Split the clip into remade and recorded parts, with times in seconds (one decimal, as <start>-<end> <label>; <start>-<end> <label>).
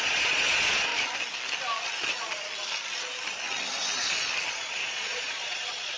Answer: 0.0-0.9 remade; 0.9-4.5 recorded; 4.5-6.0 remade